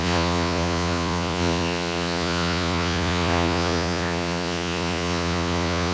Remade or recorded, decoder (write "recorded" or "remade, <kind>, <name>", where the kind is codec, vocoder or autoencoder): remade, vocoder, Vocos